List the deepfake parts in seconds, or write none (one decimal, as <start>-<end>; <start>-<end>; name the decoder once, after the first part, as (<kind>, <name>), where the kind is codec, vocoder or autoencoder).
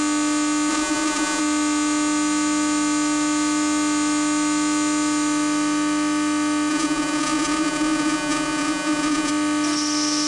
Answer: 0.7-1.4 (vocoder, Vocos); 6.7-9.3